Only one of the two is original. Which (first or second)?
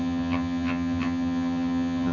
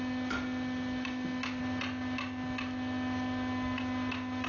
second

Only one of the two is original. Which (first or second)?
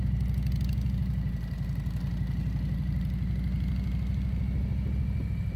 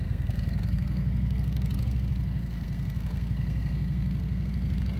first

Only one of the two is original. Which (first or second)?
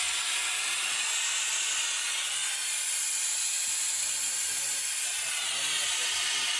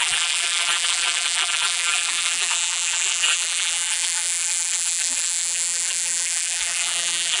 first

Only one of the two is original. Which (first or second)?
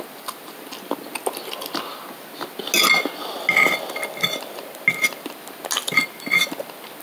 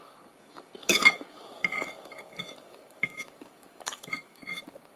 first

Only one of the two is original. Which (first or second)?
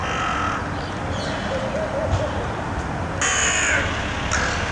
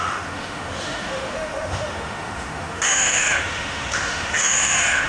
first